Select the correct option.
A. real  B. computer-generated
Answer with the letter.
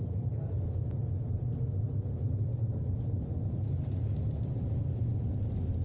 A